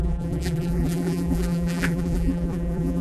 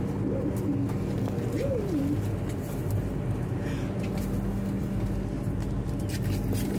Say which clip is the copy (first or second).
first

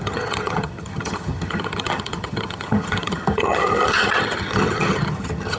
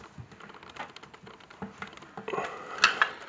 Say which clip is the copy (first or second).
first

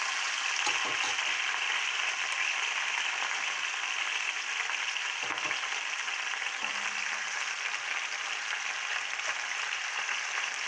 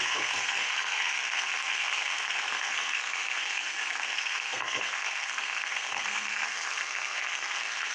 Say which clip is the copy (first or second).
second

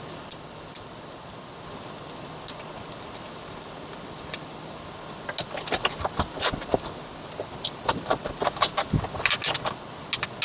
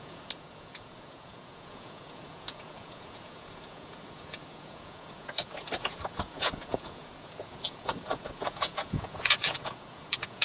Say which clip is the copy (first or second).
second